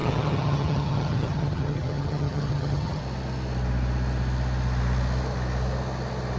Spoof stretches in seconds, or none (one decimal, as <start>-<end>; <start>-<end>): 0.0-3.0